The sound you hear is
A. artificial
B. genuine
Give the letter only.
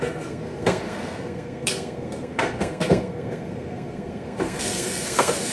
A